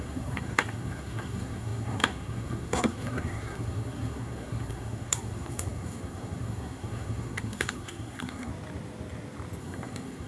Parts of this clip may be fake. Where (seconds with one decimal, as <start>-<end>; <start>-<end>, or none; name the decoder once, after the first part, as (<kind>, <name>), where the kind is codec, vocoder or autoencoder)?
0.0-8.5 (codec, SNAC); 9.6-10.3